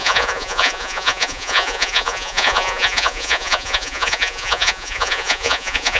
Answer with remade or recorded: remade